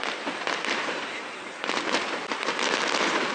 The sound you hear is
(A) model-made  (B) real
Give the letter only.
B